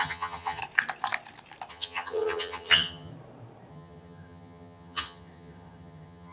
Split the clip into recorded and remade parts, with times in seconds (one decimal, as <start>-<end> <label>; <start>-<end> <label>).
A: 0.0-0.6 remade; 0.6-1.7 recorded; 1.7-3.1 remade; 3.1-3.7 recorded; 3.7-6.3 remade